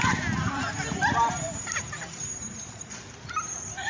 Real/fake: real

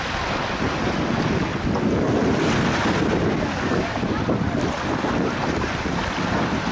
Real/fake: real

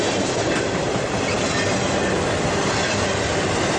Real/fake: real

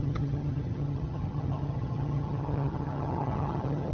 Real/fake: fake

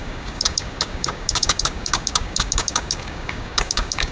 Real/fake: fake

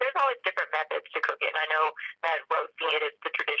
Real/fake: fake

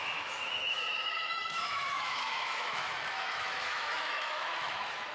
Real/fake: fake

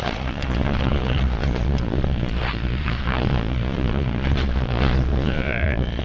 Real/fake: fake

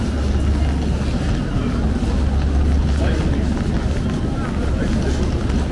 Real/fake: real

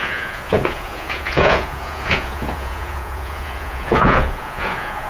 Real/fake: fake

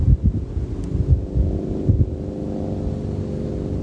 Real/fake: real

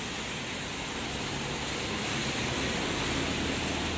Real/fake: real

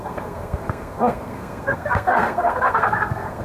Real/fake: fake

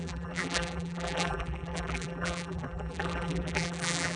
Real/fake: fake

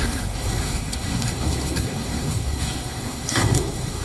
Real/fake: fake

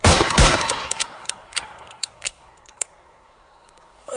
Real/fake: fake